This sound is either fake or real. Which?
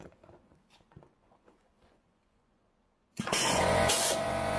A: fake